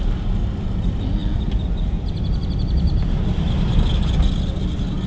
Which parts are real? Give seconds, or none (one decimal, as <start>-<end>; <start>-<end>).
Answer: 0.0-5.1